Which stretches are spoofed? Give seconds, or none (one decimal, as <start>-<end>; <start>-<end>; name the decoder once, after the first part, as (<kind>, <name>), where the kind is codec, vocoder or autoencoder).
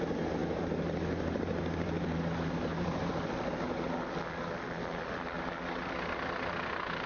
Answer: 0.4-3.0 (vocoder, BigVGAN v2)